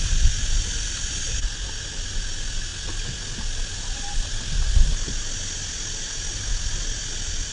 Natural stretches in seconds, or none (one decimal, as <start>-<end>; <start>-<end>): 0.0-7.5